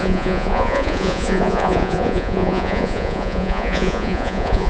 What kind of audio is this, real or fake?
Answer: fake